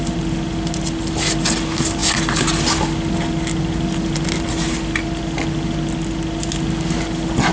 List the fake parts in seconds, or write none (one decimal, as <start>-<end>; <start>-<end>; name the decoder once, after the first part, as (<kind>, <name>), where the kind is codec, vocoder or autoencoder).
none